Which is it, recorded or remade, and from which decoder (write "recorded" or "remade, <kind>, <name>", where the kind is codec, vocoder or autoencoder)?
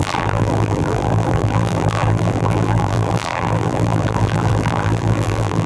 remade, vocoder, BigVGAN v2